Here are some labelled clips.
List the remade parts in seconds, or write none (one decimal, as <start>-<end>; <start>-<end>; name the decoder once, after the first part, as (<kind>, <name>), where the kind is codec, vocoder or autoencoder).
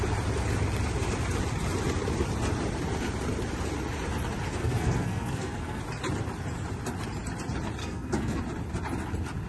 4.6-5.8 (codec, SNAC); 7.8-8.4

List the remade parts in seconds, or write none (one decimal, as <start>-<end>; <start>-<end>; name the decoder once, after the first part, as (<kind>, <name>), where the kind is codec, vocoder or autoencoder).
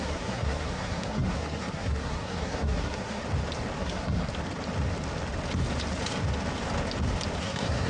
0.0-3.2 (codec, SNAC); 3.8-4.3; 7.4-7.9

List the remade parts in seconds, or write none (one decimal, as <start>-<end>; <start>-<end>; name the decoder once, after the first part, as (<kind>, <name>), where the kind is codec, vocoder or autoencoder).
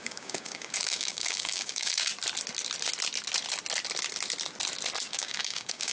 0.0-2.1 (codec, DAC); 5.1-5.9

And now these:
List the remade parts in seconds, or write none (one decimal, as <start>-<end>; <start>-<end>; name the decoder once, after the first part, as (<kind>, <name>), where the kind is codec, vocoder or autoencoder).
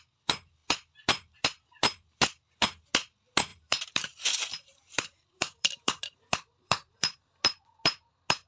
3.5-7.2 (vocoder, BigVGAN v2)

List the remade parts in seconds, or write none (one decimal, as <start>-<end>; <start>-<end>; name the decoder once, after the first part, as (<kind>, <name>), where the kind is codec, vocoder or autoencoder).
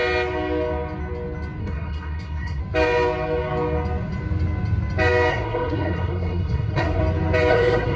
1.6-2.6 (codec, SNAC); 5.3-7.0; 7.5-8.0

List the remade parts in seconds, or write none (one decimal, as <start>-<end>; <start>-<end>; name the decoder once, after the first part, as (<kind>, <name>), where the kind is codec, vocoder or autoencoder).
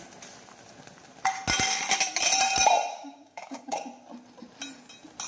2.9-3.9 (codec, DAC)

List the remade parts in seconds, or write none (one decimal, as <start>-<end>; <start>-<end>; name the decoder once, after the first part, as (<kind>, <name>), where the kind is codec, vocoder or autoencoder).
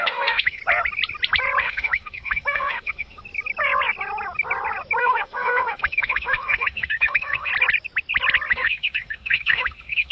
0.0-0.6 (autoencoder, DAC-VAE); 1.6-3.2; 5.0-7.5; 8.5-10.1